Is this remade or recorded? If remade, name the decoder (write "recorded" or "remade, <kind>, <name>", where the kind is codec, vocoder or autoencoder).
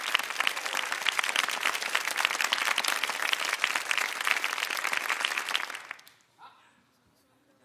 recorded